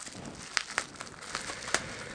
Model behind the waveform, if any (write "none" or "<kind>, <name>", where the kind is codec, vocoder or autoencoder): none